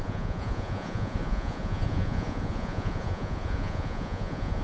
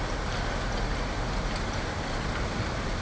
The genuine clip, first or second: second